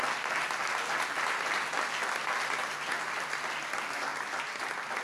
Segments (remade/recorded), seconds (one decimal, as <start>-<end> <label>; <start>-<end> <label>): 0.0-5.0 recorded